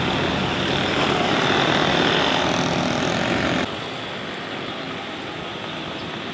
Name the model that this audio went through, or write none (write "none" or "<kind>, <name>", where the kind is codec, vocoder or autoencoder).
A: none